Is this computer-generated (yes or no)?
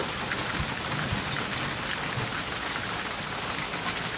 no